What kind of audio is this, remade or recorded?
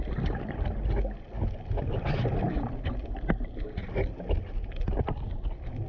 recorded